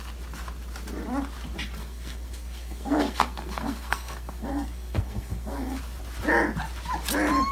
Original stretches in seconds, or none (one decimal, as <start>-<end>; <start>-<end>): 0.0-1.8; 5.8-7.5